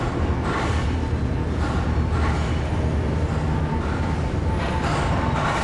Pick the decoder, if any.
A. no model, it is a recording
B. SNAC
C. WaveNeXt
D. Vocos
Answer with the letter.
A